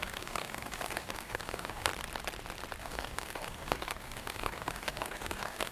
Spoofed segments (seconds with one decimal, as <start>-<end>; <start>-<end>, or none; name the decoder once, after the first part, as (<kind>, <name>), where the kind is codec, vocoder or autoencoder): 0.0-1.9 (codec, DAC); 2.8-5.7